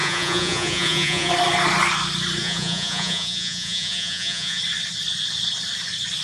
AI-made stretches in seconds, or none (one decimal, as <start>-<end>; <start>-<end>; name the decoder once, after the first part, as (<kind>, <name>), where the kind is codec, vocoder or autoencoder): 0.0-1.3 (vocoder, Vocos); 2.4-4.6